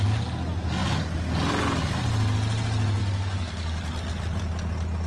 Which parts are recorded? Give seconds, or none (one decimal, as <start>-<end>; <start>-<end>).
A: 0.0-3.0; 3.8-5.1